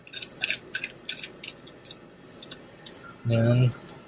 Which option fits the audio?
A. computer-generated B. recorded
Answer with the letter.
B